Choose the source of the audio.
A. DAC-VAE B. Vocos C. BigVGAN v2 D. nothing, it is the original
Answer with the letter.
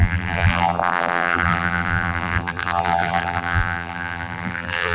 C